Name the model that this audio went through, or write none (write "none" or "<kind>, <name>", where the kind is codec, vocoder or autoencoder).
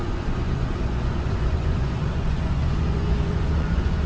vocoder, Vocos